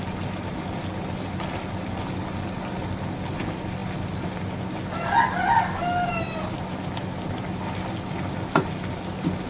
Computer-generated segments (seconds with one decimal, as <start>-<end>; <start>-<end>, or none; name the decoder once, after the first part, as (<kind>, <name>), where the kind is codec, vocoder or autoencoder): none